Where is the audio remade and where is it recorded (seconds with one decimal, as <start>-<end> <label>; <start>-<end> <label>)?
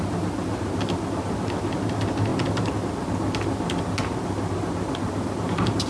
0.0-5.9 recorded